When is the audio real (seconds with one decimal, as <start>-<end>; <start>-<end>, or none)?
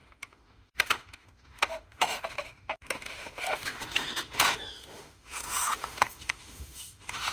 none